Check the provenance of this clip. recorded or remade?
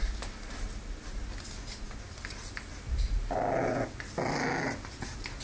recorded